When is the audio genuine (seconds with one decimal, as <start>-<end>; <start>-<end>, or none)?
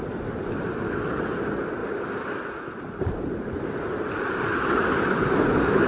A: 0.0-5.9